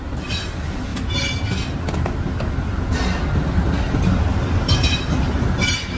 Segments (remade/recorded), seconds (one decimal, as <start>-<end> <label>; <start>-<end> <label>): 0.0-6.0 recorded